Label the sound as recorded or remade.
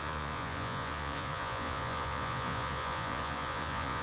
remade